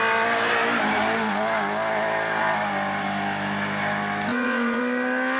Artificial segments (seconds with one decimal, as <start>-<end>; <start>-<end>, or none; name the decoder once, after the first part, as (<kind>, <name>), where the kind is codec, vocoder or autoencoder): 4.3-4.8 (vocoder, Vocos)